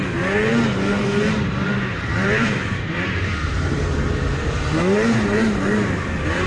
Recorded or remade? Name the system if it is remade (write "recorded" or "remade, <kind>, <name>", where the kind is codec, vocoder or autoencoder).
remade, vocoder, BigVGAN v2